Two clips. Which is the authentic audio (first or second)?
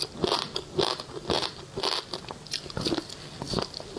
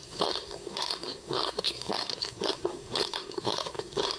first